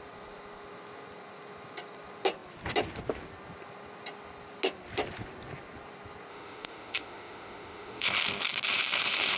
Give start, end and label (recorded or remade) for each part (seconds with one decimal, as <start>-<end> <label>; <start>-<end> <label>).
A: 0.0-6.3 recorded; 6.3-8.1 remade; 8.1-9.4 recorded